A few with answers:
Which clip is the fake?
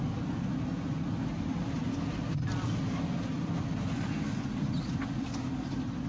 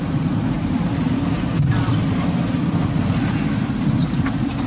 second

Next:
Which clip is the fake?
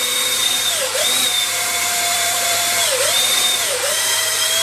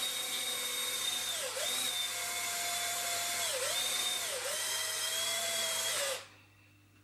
first